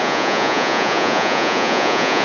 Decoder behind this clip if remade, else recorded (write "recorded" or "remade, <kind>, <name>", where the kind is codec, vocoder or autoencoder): remade, vocoder, Vocos